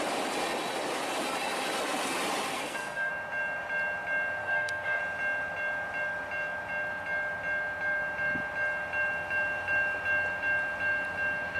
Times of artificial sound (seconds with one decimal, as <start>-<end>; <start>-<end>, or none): 2.5-3.1; 4.4-5.0